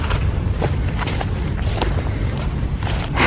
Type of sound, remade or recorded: remade